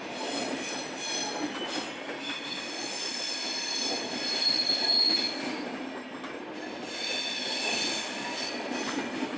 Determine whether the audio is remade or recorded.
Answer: recorded